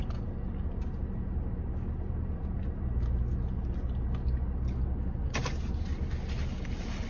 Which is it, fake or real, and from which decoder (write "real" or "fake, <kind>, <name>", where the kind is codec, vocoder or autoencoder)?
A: real